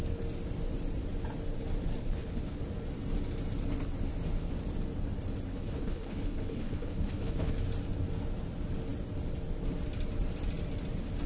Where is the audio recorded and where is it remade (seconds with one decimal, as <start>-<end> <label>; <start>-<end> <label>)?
0.0-2.0 recorded; 2.0-2.6 remade; 2.6-5.5 recorded; 5.5-7.5 remade; 7.5-11.3 recorded